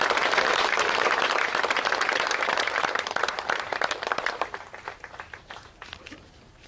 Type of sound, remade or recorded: remade